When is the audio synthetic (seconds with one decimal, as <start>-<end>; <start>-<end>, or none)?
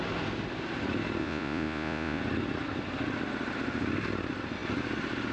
1.2-2.2